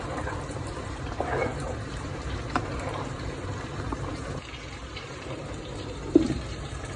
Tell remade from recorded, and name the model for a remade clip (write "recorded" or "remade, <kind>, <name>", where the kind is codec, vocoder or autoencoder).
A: remade, vocoder, BigVGAN v2